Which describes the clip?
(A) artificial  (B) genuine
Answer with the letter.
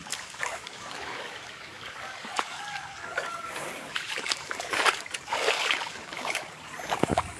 A